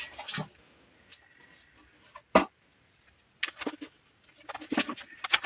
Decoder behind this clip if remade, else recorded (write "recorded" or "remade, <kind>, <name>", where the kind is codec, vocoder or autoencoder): recorded